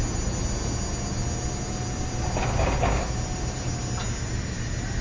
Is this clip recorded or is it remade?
recorded